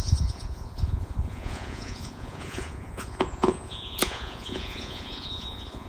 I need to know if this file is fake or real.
fake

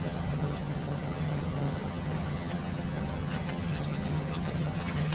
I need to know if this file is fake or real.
fake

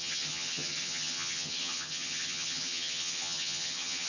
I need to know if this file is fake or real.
fake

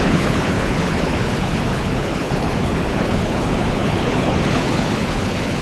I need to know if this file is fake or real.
fake